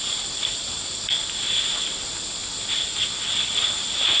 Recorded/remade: recorded